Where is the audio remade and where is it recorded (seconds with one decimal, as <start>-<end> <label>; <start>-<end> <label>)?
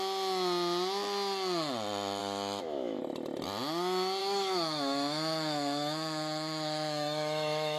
0.0-2.2 recorded; 2.2-3.0 remade; 3.0-4.2 recorded; 4.2-7.8 remade